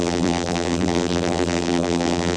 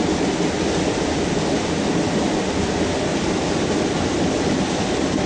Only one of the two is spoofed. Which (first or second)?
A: first